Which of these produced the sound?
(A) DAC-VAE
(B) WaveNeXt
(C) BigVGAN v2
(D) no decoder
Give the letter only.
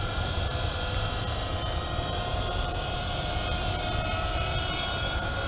C